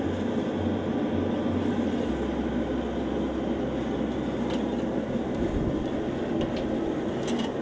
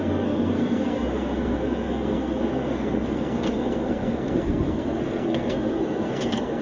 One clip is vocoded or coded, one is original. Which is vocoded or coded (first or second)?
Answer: second